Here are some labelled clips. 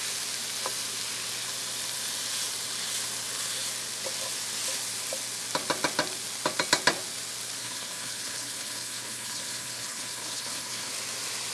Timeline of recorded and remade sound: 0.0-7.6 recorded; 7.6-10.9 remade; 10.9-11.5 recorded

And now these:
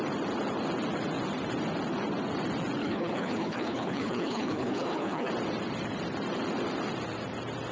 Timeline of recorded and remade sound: 0.0-2.8 recorded; 2.8-5.3 remade; 5.3-7.7 recorded

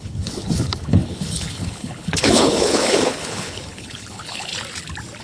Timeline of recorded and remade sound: 0.0-4.5 remade; 4.5-5.2 recorded

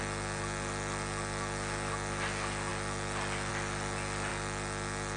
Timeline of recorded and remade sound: 0.0-5.2 recorded

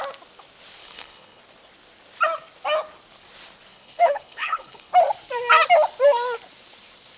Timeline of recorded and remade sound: 0.0-0.8 recorded; 0.8-1.4 remade; 1.4-3.7 recorded; 3.7-4.9 remade; 4.9-7.2 recorded